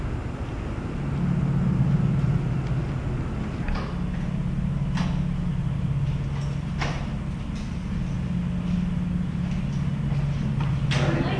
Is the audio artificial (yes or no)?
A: no